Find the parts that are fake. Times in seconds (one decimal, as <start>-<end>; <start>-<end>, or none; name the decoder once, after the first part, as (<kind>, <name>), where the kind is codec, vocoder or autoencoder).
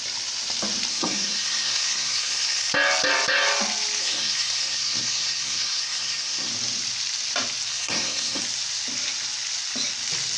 0.9-2.7 (codec, SNAC); 4.0-6.5; 7.7-8.4